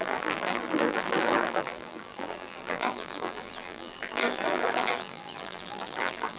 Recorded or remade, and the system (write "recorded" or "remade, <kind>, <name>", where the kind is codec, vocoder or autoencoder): remade, vocoder, BigVGAN v2